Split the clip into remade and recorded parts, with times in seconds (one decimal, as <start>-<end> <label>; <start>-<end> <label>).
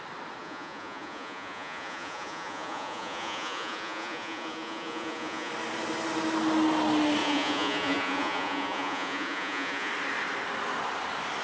0.0-0.4 recorded; 0.4-5.5 remade; 5.5-7.2 recorded; 7.2-9.9 remade; 9.9-11.4 recorded